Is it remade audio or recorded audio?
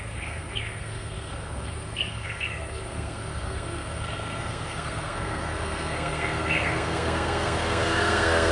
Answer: remade